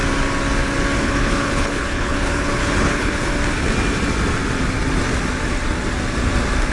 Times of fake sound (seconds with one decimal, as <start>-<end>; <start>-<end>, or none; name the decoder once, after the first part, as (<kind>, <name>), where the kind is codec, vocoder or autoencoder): 1.0-3.3 (codec, HILCodec)